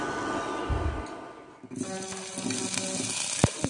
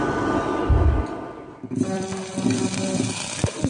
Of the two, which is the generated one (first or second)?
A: second